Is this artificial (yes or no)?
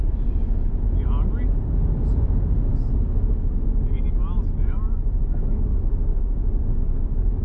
no